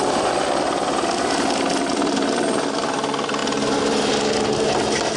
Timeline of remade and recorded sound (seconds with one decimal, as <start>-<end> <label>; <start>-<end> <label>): 0.0-5.2 recorded